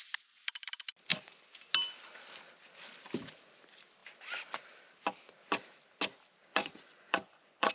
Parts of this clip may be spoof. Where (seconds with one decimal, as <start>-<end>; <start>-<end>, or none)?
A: 6.5-7.7